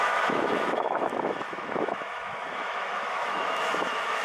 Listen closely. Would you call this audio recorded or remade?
remade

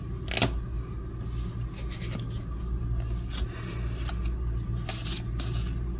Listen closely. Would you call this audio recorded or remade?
recorded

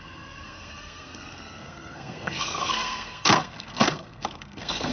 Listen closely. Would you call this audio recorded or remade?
remade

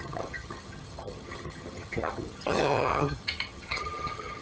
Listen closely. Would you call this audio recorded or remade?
remade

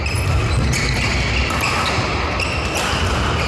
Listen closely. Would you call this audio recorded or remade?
recorded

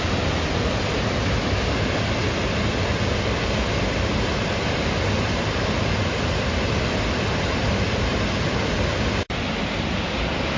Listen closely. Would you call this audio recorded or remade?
recorded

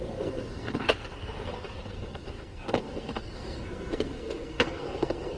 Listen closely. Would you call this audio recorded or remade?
remade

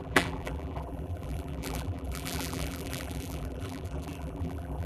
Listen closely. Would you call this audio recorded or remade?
remade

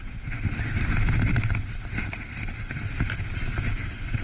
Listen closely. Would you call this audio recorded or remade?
recorded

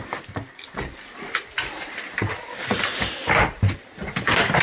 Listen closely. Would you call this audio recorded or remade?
recorded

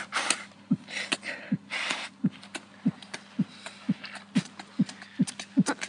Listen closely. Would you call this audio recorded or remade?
recorded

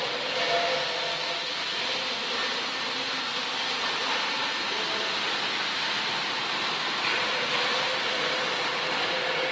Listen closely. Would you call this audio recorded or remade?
recorded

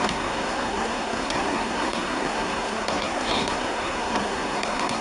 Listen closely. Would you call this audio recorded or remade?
remade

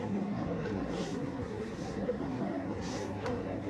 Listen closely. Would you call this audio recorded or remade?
remade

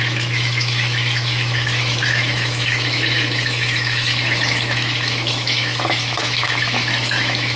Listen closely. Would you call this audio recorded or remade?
remade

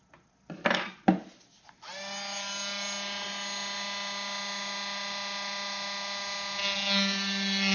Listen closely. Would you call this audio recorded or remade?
recorded